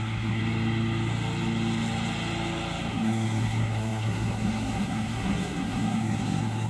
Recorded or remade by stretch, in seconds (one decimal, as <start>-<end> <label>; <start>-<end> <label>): 0.0-0.4 remade; 0.4-2.9 recorded; 2.9-6.7 remade